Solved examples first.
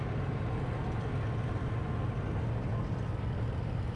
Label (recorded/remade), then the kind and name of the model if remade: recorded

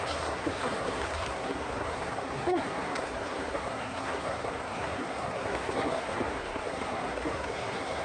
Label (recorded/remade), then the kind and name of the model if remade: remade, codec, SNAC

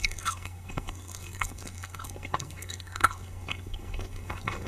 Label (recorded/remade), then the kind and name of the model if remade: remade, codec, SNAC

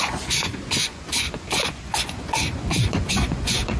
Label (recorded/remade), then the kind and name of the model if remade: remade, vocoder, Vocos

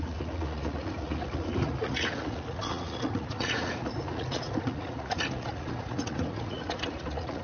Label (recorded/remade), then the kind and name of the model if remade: remade, vocoder, Vocos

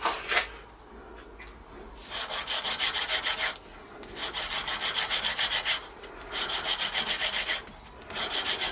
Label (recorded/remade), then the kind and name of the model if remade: recorded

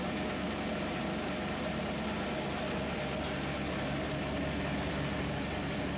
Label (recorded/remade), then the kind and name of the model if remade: recorded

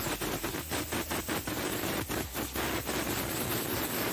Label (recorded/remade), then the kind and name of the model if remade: recorded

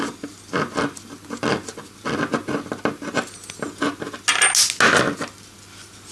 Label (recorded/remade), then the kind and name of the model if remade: recorded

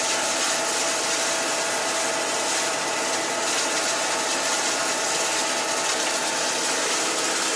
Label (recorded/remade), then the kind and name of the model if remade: recorded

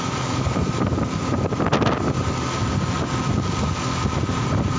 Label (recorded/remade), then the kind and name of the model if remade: recorded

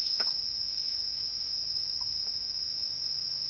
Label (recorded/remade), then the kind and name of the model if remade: remade, autoencoder, DAC-VAE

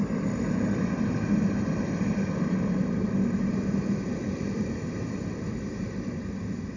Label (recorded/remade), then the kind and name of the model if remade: remade, vocoder, BigVGAN v2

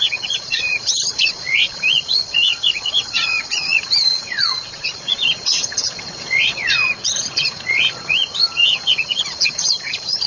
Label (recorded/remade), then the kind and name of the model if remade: remade, vocoder, Vocos